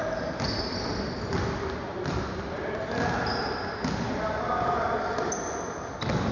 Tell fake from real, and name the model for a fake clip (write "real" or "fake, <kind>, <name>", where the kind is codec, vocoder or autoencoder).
real